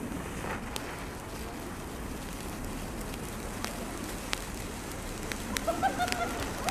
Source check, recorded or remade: recorded